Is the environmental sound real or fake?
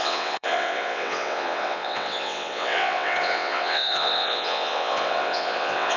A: fake